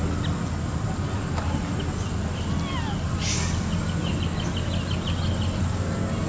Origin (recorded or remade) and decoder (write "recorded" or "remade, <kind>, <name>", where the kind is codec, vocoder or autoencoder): recorded